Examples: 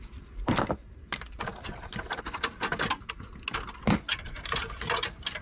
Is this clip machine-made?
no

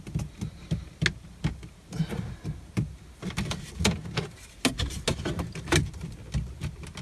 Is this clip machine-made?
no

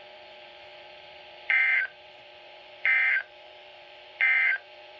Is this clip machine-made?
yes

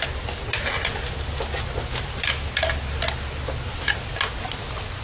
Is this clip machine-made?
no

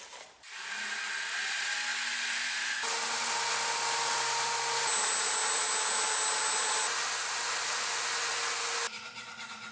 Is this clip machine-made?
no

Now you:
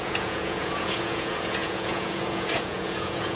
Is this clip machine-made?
yes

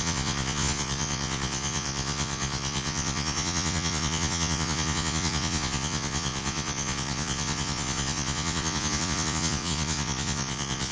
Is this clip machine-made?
yes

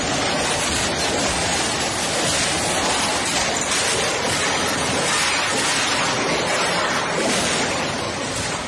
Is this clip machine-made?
no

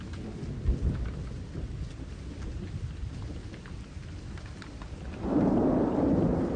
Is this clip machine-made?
no